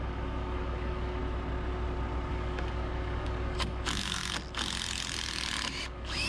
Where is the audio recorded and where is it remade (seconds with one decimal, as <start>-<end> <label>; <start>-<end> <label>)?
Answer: 0.0-1.2 remade; 1.2-2.3 recorded; 2.3-4.2 remade; 4.2-5.8 recorded; 5.8-6.3 remade